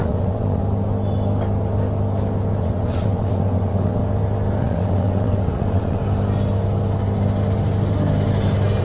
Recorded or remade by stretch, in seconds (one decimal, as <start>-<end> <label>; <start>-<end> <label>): 0.0-0.6 remade; 0.6-2.6 recorded; 2.6-4.0 remade; 4.0-4.6 recorded; 4.6-6.0 remade; 6.0-8.8 recorded